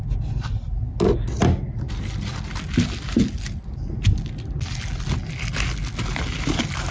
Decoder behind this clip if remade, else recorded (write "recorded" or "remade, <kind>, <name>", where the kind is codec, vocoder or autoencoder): recorded